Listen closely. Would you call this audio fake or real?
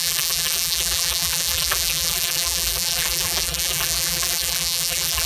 fake